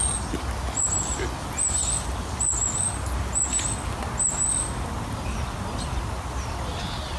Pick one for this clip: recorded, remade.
recorded